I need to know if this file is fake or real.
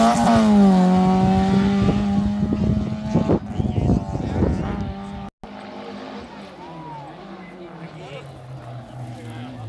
real